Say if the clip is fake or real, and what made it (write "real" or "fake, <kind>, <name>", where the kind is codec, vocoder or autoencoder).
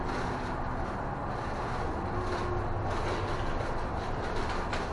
real